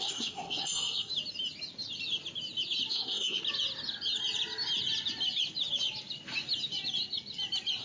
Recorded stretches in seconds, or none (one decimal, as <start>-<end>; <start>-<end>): 1.1-2.9; 3.4-7.8